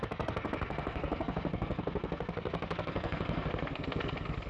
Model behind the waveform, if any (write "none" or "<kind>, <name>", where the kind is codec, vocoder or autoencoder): codec, SNAC